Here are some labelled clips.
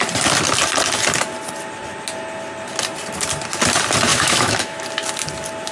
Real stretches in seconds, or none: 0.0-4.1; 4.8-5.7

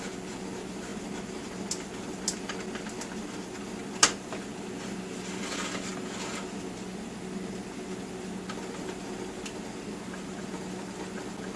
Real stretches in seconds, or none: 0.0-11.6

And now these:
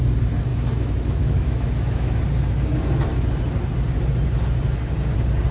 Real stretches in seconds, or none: 0.0-0.5; 2.2-5.5